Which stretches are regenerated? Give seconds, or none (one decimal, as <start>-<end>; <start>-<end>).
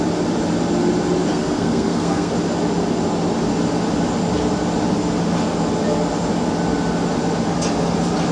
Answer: 1.3-2.3